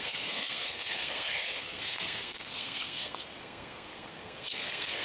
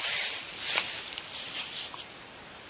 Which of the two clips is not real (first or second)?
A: first